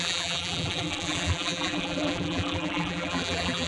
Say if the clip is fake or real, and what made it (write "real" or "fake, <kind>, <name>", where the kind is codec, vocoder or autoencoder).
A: fake, vocoder, BigVGAN v2